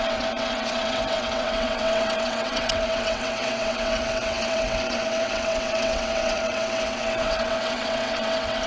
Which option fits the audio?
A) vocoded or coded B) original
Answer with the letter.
A